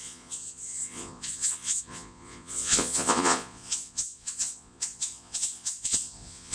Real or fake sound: fake